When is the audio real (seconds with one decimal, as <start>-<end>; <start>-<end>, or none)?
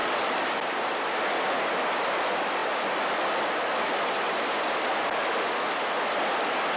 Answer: 0.0-6.8